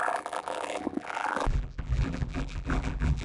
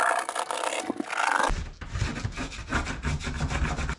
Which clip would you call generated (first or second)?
first